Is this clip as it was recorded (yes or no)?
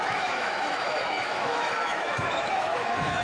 no